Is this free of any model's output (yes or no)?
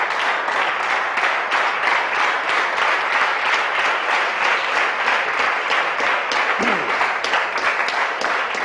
yes